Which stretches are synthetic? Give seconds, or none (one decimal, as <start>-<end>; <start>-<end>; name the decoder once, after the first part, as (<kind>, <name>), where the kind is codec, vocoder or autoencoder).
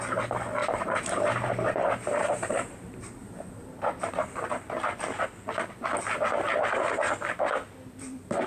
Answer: 0.6-3.5 (vocoder, BigVGAN v2)